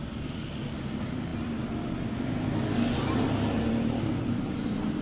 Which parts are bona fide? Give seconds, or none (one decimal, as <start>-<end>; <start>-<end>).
0.0-5.0